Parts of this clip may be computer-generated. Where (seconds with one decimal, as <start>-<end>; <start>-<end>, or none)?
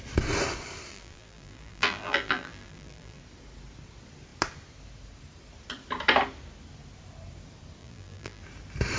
0.9-3.2; 7.8-8.4